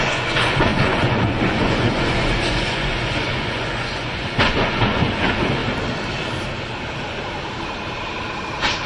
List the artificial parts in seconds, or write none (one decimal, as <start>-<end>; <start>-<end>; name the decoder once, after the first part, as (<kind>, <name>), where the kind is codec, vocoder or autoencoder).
0.0-5.6 (vocoder, Vocos)